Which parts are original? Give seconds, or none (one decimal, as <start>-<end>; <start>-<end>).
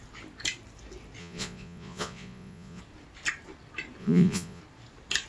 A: 0.0-1.2; 2.8-4.0; 4.6-5.3